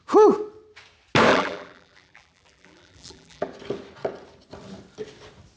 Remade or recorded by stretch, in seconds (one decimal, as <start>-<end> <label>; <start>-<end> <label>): 0.0-1.3 recorded; 1.3-3.5 remade; 3.5-5.6 recorded